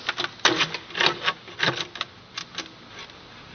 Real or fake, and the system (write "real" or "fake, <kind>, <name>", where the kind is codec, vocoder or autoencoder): real